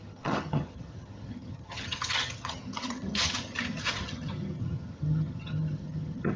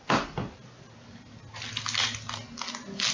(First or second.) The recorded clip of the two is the second